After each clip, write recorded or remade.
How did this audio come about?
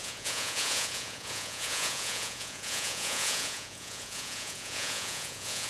remade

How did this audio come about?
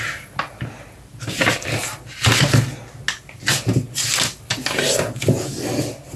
recorded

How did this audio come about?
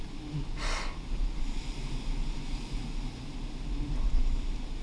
recorded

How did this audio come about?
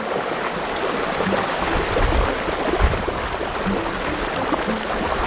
recorded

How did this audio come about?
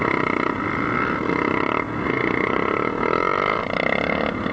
recorded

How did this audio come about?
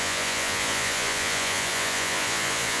remade